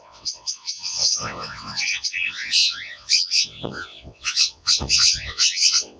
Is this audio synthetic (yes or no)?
yes